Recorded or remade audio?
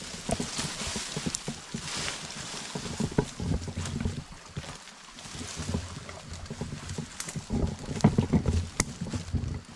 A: recorded